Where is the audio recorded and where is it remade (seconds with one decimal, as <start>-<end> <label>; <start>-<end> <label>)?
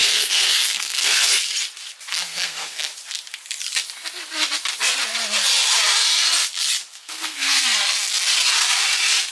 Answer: 0.0-1.3 remade; 1.3-2.1 recorded; 2.1-2.9 remade; 2.9-6.9 recorded; 6.9-7.6 remade; 7.6-9.3 recorded